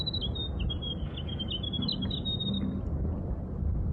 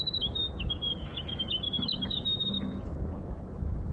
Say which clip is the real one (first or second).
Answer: first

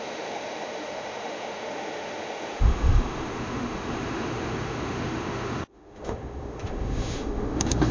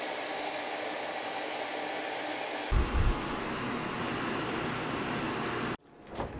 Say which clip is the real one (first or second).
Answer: second